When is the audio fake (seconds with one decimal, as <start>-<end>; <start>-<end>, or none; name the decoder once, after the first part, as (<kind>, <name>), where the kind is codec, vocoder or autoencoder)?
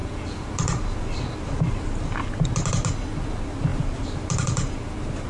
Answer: 0.0-0.5 (vocoder, Vocos)